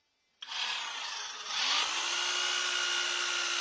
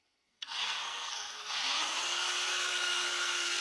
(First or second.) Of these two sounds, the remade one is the second